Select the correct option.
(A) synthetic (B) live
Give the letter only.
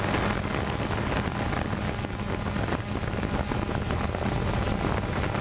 B